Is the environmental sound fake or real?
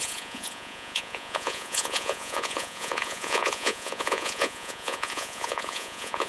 fake